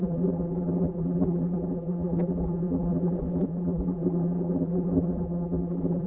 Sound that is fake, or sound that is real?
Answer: fake